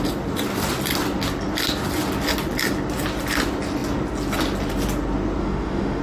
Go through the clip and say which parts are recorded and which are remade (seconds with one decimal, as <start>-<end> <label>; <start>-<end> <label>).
0.0-5.4 recorded; 5.4-6.0 remade